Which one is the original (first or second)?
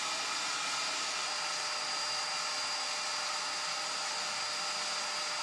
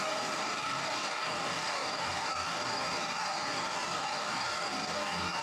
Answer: first